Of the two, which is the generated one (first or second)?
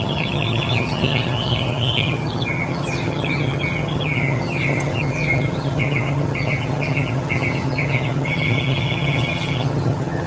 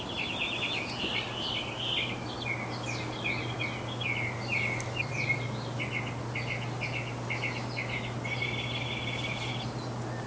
first